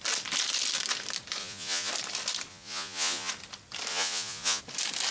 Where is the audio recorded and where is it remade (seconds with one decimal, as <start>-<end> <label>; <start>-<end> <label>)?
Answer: 0.0-1.4 recorded; 1.4-1.9 remade; 1.9-2.5 recorded; 2.5-3.3 remade; 3.3-3.9 recorded; 3.9-4.6 remade; 4.6-5.1 recorded